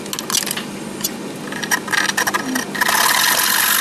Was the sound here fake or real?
real